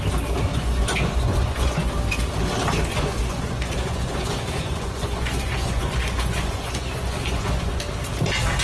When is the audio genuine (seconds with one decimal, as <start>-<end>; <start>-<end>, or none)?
0.0-0.5; 1.9-2.9; 7.8-8.6